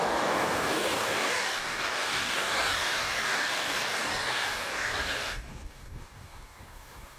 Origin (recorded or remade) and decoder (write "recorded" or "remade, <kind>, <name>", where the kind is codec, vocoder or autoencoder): remade, codec, DAC